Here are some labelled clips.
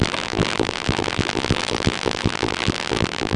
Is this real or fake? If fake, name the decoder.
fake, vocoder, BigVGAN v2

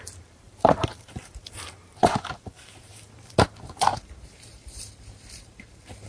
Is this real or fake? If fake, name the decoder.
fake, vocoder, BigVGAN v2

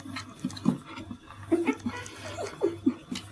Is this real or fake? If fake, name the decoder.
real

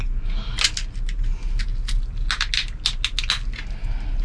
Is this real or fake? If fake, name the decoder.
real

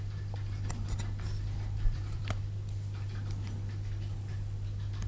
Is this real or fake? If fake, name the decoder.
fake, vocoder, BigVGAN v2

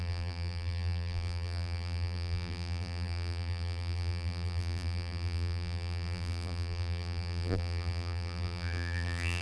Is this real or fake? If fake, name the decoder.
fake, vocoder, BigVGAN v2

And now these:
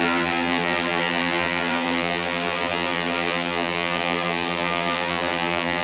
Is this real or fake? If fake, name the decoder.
fake, vocoder, BigVGAN v2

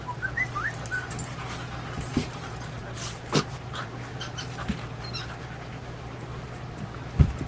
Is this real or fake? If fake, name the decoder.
fake, vocoder, BigVGAN v2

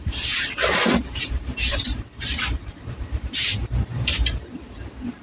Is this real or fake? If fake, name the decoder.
fake, vocoder, BigVGAN v2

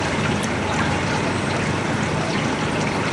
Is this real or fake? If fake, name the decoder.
fake, vocoder, BigVGAN v2